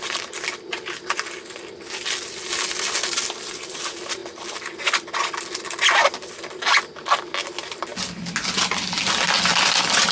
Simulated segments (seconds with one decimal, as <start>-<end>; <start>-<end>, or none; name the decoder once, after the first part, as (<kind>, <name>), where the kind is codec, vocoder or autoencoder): 4.2-4.9 (vocoder, BigVGAN v2)